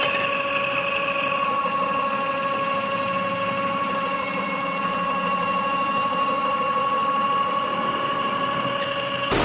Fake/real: fake